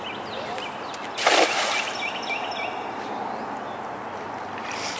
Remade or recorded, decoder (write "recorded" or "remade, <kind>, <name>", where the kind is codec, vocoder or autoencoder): recorded